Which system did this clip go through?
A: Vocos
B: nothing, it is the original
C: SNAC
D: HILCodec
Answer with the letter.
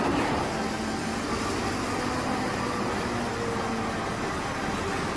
B